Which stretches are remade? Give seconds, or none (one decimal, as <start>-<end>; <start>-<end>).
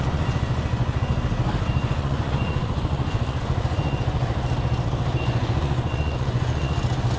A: 0.0-1.1; 1.7-4.3; 5.2-7.2